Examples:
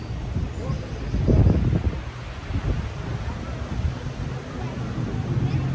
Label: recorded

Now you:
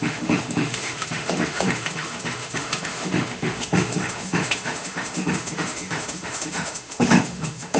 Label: remade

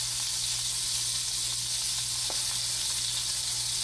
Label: recorded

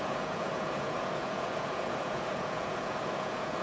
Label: remade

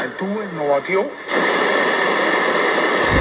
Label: recorded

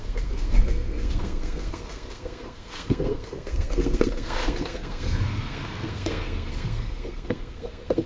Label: remade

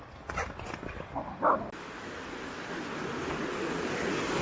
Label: recorded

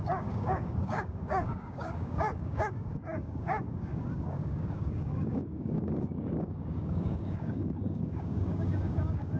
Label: remade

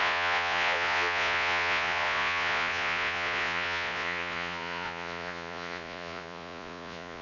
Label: remade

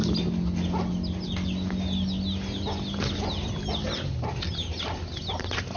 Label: recorded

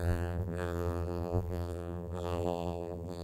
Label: remade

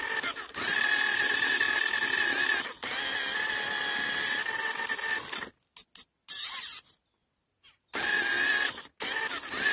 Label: recorded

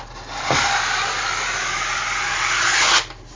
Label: recorded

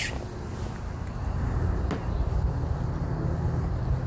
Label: recorded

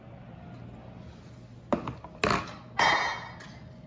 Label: recorded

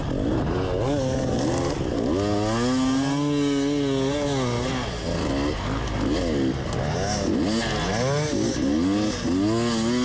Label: recorded